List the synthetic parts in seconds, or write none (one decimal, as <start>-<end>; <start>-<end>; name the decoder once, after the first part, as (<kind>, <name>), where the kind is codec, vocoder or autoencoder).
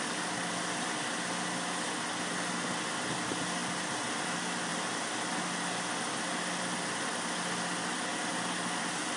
none